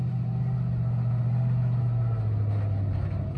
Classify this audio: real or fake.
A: real